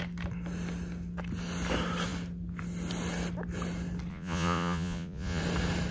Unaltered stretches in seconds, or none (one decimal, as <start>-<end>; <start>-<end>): 0.0-4.1; 5.4-5.9